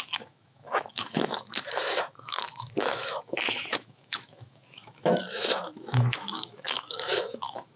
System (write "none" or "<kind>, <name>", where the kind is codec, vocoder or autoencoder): autoencoder, DAC-VAE